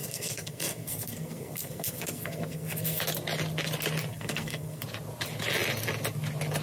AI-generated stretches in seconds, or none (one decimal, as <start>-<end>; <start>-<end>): 0.0-3.0; 4.1-4.8